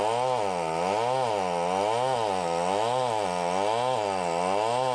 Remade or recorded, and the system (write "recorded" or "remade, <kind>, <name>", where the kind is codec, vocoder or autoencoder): recorded